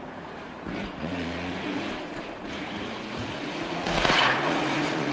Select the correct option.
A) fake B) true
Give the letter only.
A